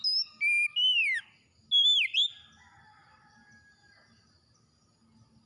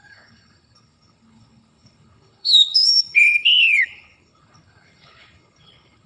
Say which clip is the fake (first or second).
second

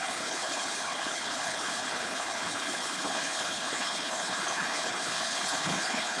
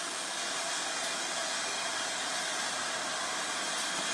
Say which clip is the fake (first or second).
first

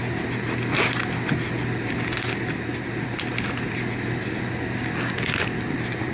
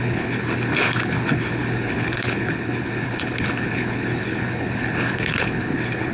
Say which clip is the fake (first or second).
second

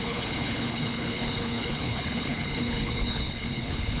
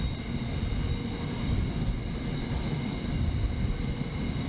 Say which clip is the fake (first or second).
first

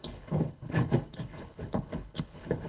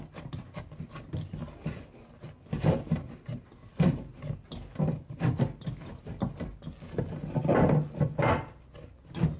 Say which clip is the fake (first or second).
first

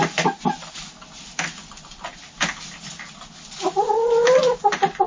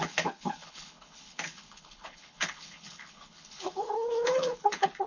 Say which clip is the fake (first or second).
second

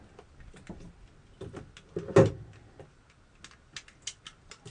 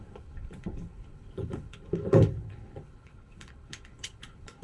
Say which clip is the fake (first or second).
second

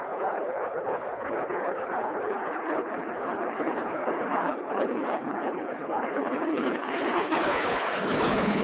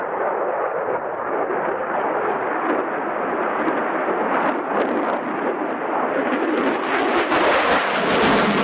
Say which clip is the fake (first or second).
first